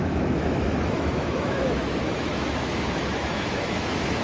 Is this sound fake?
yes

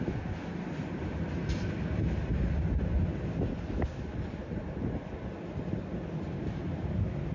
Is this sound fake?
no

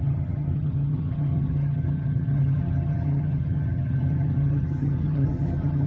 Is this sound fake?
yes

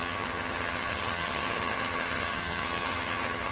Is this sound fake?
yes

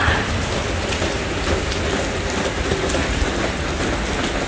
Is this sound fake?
no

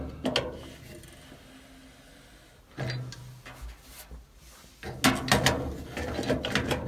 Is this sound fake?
no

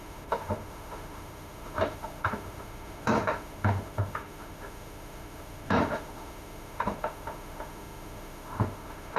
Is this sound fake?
yes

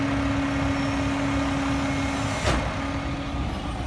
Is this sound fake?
no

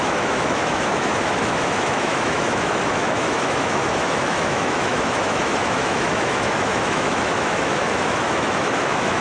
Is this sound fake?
yes